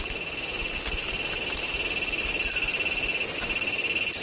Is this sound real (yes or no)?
yes